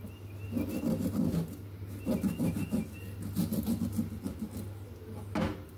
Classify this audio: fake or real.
real